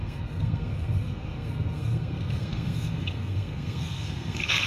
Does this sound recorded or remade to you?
remade